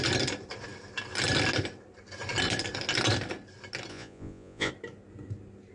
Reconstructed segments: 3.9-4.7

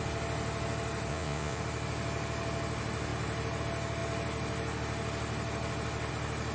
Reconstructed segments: 1.1-1.6

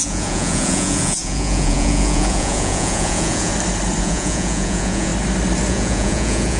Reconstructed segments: 0.0-3.5; 4.0-5.1; 5.7-6.6

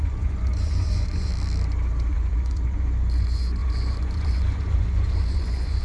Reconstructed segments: 0.0-1.3; 2.1-5.8

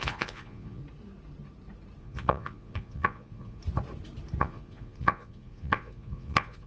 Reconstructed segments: 0.0-0.8; 2.0-3.6; 4.4-6.7

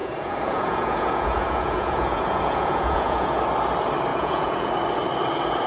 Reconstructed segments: 0.0-3.4; 4.1-4.7

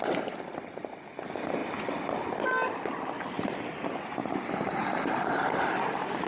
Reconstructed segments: none

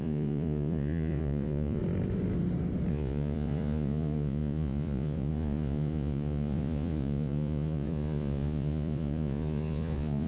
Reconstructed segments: 0.0-1.8; 2.9-10.3